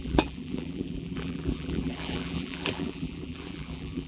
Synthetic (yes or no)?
yes